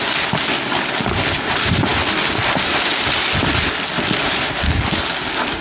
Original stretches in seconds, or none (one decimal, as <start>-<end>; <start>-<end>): 0.0-5.6

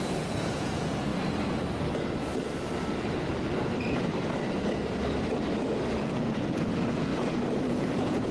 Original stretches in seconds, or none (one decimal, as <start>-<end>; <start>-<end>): 1.1-6.0; 7.1-7.6

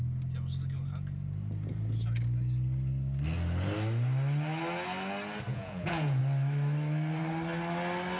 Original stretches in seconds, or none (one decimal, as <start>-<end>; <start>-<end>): 0.0-5.5; 6.2-8.2

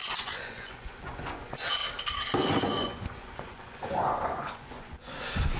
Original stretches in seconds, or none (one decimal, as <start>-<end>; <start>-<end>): 1.8-2.6

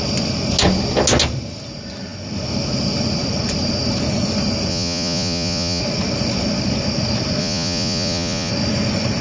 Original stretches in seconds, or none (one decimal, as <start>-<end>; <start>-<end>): 0.0-4.7; 5.8-7.4; 8.5-9.2

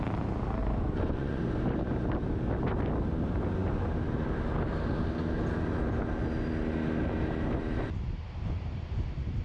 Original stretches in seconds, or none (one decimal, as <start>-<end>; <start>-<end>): 0.0-0.6; 1.4-9.4

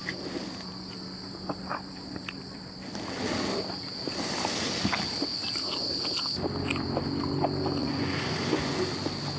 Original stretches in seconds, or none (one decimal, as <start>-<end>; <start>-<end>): 0.0-7.8; 8.8-9.4

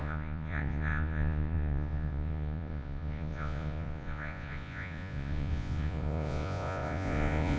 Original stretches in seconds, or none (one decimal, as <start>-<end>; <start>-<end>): none